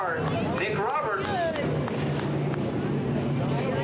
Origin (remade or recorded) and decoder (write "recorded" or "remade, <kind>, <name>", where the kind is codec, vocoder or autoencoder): recorded